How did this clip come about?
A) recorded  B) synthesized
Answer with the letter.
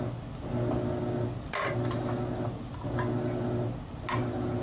A